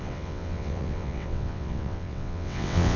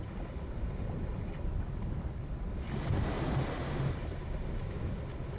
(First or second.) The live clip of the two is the second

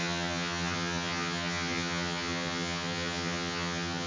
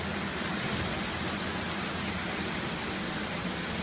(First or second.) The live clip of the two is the second